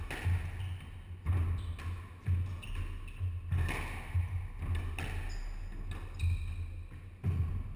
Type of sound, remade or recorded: recorded